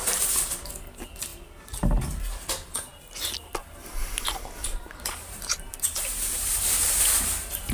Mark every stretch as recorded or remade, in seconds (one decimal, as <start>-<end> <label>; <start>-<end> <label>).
0.0-4.6 recorded; 4.6-7.0 remade; 7.0-7.7 recorded